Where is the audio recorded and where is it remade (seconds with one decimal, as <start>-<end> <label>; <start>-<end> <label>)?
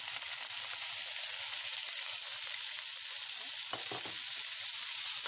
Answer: 0.0-5.3 recorded